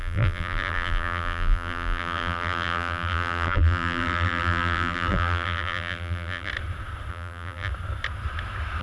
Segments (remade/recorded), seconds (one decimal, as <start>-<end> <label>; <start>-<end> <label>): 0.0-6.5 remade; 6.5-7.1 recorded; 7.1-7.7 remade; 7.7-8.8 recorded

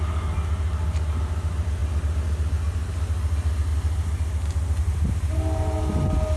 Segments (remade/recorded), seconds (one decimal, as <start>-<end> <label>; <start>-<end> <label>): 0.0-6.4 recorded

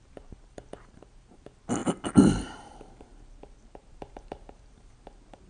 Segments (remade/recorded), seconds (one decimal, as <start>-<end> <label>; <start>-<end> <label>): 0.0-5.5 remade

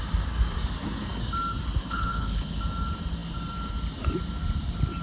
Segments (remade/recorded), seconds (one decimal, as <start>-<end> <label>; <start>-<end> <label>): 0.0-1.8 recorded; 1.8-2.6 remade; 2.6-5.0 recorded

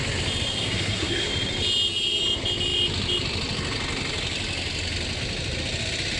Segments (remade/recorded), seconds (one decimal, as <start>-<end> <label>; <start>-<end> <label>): 0.0-0.5 recorded; 0.5-1.3 remade; 1.3-6.2 recorded

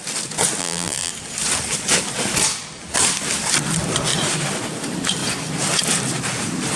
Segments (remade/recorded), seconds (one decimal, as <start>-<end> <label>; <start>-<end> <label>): 0.0-0.6 recorded; 0.6-1.1 remade; 1.1-6.8 recorded

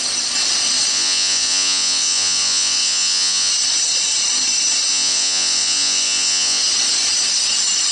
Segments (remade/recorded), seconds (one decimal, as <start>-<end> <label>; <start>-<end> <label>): 0.0-0.9 recorded; 0.9-3.5 remade; 3.5-4.9 recorded; 4.9-6.6 remade; 6.6-7.9 recorded